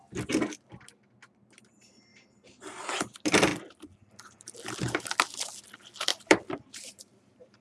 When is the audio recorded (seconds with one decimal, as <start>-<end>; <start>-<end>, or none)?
0.0-2.1; 2.8-6.1